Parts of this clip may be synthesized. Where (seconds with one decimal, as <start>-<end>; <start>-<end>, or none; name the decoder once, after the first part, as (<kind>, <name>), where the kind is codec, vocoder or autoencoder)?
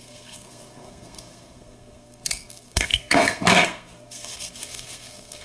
0.0-5.4 (codec, SNAC)